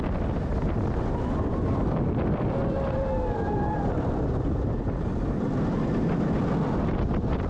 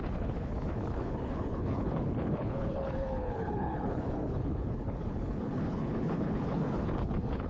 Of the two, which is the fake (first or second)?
second